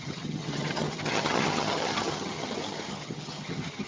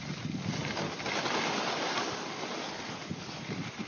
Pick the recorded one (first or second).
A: second